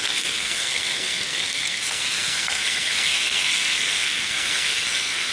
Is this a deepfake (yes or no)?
yes